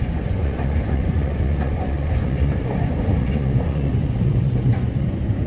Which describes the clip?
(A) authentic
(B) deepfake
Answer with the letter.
B